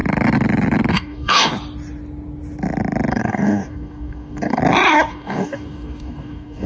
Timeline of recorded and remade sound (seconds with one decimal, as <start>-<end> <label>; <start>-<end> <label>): 0.0-0.9 recorded; 0.9-1.5 remade; 1.5-3.1 recorded; 3.1-4.6 remade; 4.6-5.1 recorded; 5.1-6.7 remade